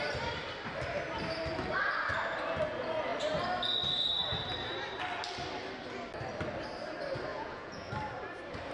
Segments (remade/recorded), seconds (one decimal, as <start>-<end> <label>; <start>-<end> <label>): 0.0-7.3 recorded; 7.3-7.9 remade; 7.9-8.7 recorded